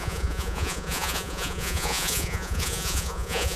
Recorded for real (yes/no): no